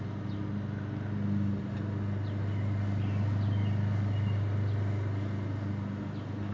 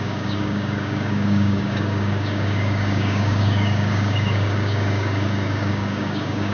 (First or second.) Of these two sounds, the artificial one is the second